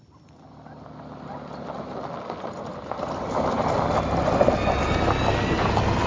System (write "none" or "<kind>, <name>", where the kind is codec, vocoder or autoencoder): none